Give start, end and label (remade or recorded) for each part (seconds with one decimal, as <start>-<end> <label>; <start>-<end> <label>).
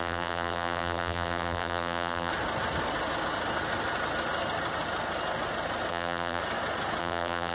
0.0-2.3 remade; 2.3-5.9 recorded; 5.9-6.4 remade; 6.4-7.0 recorded; 7.0-7.5 remade